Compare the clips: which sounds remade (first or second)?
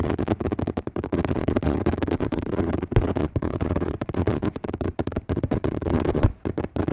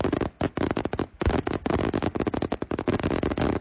first